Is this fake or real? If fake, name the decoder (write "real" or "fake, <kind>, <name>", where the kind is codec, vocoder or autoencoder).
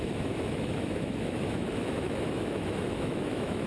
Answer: fake, autoencoder, DAC-VAE